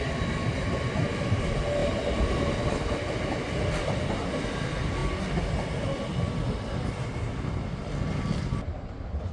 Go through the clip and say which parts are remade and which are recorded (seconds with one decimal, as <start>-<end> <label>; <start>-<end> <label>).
0.0-9.3 recorded